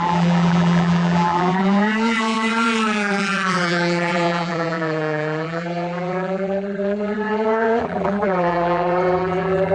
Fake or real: fake